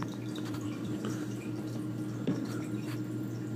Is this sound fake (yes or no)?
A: yes